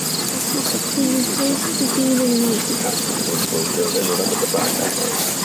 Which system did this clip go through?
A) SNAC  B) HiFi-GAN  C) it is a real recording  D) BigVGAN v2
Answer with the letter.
C